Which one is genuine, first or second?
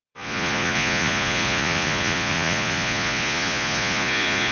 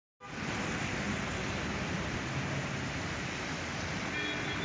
second